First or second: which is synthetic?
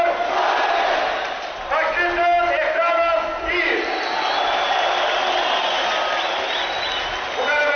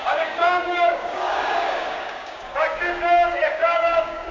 second